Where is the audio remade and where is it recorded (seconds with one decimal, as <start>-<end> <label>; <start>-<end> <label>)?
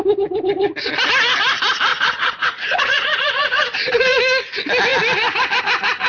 0.0-1.9 recorded; 1.9-4.2 remade; 4.2-6.1 recorded